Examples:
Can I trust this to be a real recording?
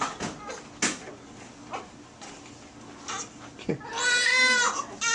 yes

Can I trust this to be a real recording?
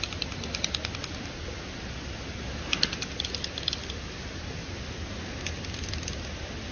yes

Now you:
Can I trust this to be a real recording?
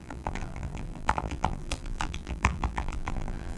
no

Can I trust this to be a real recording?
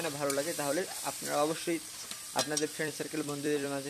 no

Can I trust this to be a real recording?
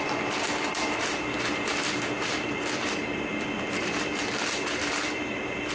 no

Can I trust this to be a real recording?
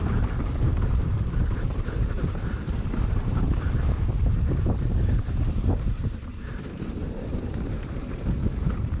no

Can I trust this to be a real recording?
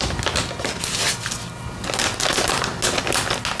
yes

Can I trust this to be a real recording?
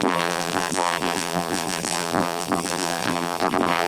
no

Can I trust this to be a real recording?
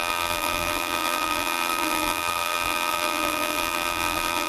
no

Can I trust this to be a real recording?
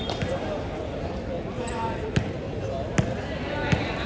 yes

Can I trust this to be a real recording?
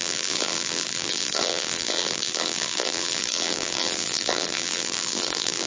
no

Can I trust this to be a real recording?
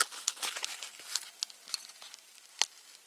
yes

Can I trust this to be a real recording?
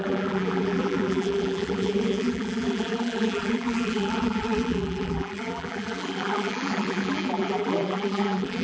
no